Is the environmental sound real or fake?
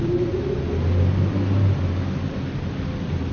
real